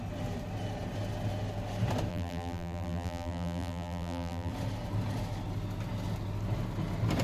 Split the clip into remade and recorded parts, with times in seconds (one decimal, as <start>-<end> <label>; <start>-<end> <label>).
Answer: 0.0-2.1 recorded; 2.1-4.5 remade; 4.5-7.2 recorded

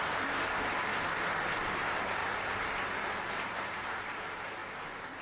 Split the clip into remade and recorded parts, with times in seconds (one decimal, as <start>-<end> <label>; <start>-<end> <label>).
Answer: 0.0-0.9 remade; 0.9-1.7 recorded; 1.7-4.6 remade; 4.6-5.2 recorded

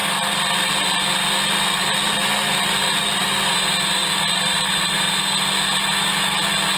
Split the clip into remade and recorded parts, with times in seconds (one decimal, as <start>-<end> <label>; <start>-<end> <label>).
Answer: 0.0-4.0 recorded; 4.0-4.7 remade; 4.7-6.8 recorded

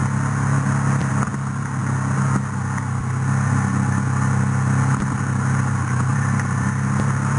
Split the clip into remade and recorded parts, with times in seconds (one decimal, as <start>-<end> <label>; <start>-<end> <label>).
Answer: 0.0-6.1 recorded; 6.1-7.4 remade

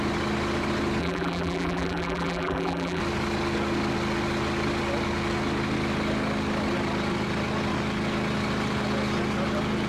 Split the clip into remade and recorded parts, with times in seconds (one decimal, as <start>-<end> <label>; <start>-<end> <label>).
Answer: 0.0-1.0 recorded; 1.0-3.0 remade; 3.0-9.9 recorded

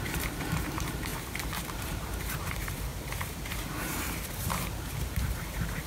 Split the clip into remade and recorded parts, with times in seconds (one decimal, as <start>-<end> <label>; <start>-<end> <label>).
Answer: 0.0-2.9 remade; 2.9-4.6 recorded; 4.6-5.9 remade

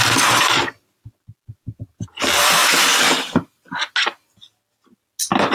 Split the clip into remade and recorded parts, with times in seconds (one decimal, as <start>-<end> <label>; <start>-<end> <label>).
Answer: 0.0-5.5 recorded